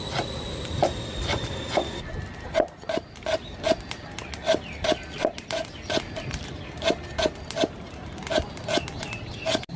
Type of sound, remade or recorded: recorded